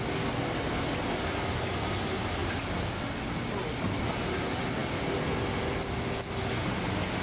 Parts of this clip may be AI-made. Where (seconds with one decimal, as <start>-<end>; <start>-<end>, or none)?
none